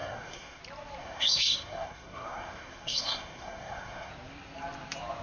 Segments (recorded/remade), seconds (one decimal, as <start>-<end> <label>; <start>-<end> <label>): 0.0-0.6 remade; 0.6-1.0 recorded; 1.0-4.1 remade; 4.1-5.2 recorded